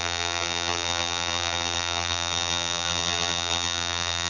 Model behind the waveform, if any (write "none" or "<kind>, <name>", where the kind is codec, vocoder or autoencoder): vocoder, BigVGAN v2